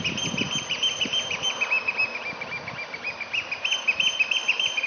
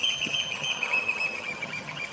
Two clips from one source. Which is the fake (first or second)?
second